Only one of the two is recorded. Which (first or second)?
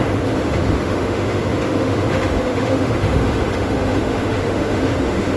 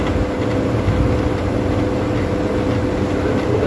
second